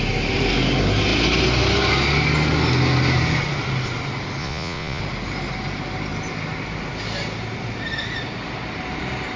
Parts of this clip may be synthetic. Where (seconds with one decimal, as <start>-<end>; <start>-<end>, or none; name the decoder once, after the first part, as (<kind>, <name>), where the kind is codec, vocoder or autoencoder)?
4.4-5.0 (vocoder, Vocos)